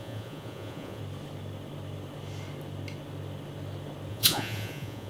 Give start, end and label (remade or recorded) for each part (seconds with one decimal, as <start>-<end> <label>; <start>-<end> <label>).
0.0-1.0 remade; 1.0-4.1 recorded; 4.1-5.1 remade